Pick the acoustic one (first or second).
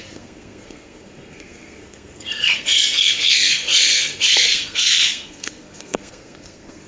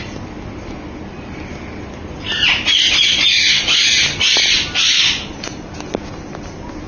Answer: second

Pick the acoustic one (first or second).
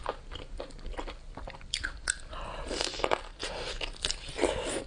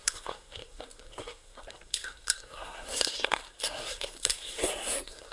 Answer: first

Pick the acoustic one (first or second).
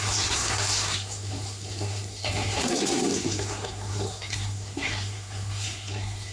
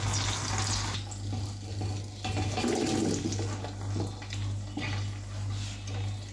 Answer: second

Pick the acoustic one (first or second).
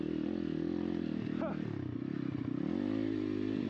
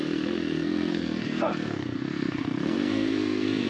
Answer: first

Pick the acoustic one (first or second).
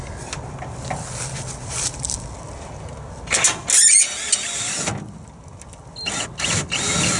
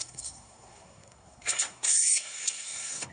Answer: first